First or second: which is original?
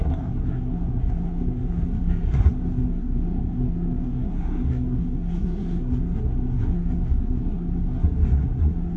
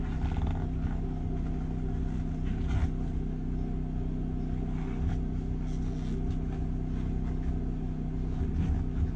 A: second